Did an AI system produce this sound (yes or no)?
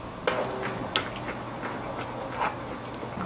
no